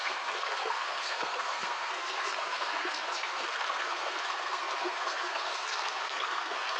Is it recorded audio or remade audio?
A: remade